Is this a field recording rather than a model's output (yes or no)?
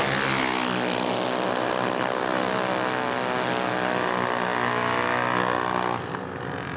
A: yes